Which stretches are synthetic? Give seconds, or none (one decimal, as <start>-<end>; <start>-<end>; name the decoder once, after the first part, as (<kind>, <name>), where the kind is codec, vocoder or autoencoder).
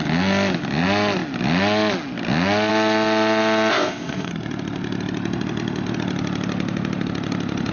3.7-4.3 (codec, ZipCodec)